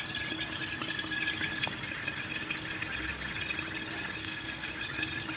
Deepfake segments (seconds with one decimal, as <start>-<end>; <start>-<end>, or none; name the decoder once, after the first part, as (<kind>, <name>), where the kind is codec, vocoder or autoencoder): 4.2-4.7 (codec, SNAC)